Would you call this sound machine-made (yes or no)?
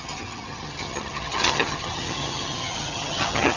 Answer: yes